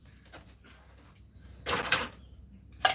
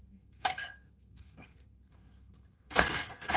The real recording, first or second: first